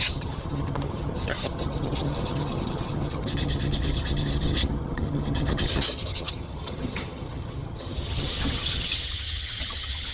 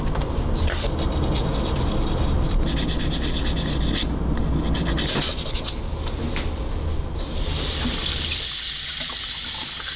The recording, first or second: second